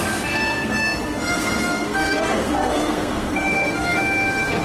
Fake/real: fake